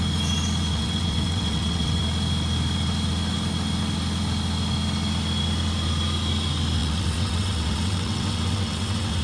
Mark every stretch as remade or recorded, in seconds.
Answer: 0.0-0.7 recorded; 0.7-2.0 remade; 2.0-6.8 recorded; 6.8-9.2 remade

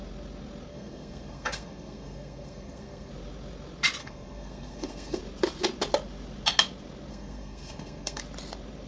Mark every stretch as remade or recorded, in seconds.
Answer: 0.0-0.7 recorded; 0.7-3.1 remade; 3.1-4.0 recorded; 4.0-5.2 remade; 5.2-7.1 recorded; 7.1-8.2 remade; 8.2-8.9 recorded

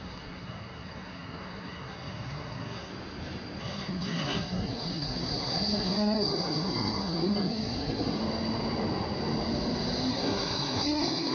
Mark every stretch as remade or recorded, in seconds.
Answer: 0.0-2.9 remade; 2.9-3.6 recorded; 3.6-8.2 remade; 8.2-10.1 recorded; 10.1-11.3 remade

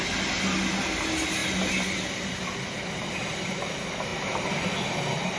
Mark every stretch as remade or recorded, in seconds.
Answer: 0.0-5.4 recorded

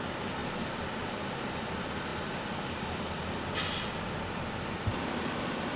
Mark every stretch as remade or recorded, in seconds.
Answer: 0.0-0.4 recorded; 0.4-1.2 remade; 1.2-5.8 recorded

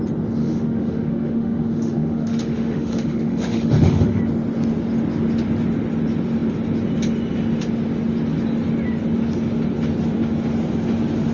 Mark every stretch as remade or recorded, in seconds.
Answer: 0.0-0.4 recorded; 0.4-4.2 remade; 4.2-11.3 recorded

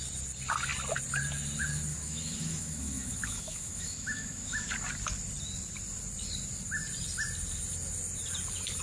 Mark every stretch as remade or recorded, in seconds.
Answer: 0.0-1.9 recorded; 1.9-4.6 remade; 4.6-8.8 recorded